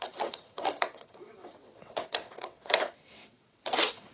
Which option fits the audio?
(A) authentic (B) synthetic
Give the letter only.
B